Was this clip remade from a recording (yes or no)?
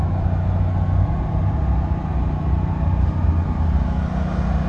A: no